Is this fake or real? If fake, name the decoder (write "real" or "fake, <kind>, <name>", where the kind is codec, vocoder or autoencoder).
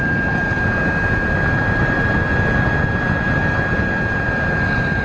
real